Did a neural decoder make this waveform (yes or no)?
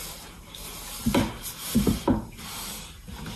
no